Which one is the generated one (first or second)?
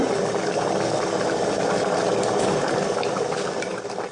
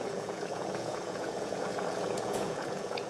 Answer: second